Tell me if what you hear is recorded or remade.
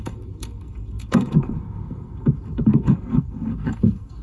remade